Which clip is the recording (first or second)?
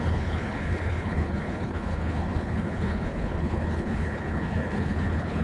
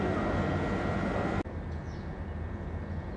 second